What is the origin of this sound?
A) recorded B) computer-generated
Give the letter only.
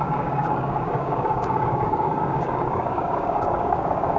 B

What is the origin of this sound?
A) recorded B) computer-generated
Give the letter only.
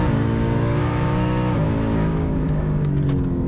B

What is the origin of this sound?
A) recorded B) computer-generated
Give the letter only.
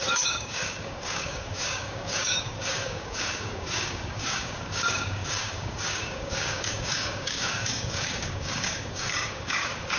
B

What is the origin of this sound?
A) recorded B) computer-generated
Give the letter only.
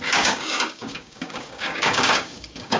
B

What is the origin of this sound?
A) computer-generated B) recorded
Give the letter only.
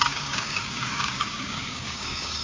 A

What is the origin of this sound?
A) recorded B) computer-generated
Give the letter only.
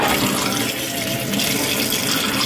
A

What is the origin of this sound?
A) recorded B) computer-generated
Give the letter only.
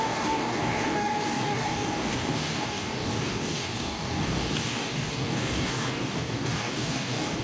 B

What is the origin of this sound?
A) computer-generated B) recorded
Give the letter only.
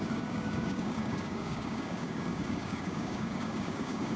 A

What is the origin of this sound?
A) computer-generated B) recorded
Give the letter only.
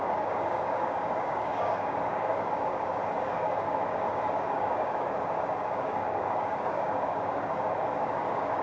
A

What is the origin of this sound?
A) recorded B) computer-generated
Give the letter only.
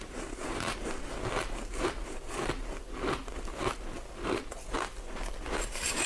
A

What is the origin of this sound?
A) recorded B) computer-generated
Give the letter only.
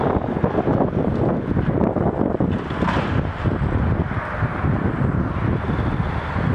A